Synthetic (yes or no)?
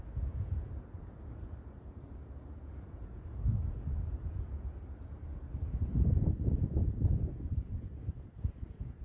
yes